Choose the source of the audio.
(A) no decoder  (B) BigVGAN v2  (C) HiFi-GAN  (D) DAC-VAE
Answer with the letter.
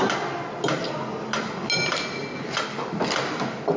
A